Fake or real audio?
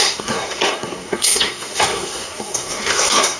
fake